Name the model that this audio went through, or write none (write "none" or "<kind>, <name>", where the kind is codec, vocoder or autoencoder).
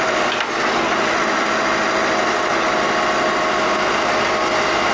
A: none